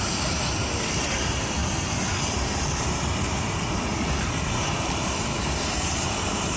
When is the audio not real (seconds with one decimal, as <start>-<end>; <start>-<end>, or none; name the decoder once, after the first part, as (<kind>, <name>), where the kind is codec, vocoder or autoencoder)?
none